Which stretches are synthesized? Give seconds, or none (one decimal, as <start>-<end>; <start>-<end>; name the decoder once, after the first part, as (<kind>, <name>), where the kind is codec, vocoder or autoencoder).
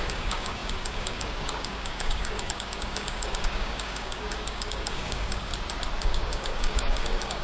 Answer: 0.0-5.5 (codec, DAC); 6.0-7.4